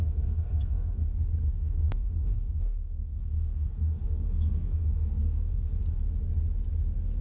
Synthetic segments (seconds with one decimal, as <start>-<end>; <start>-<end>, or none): 0.0-1.0; 1.5-5.8